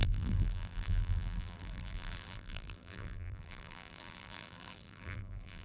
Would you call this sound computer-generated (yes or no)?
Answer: yes